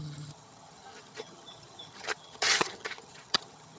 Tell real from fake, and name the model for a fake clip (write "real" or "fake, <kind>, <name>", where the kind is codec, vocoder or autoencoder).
fake, vocoder, HiFi-GAN